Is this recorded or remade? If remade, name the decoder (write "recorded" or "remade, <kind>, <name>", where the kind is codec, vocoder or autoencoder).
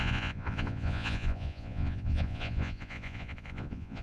remade, vocoder, Vocos